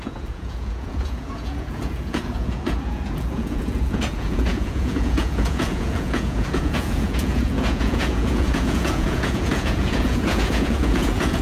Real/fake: fake